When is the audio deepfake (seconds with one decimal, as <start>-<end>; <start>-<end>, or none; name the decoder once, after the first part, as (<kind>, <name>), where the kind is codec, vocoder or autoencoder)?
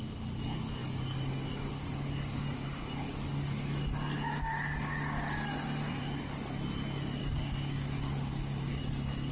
7.2-8.8 (codec, DAC)